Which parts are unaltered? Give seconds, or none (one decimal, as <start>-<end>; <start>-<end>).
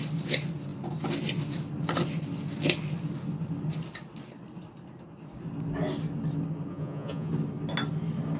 0.0-6.7; 7.3-8.4